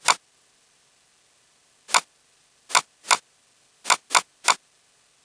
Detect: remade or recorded recorded